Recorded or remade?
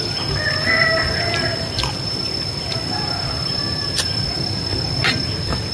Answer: remade